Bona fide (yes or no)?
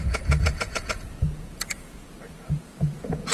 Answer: no